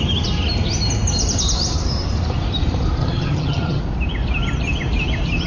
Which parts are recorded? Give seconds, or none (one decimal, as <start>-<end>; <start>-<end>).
0.0-3.0; 3.8-5.5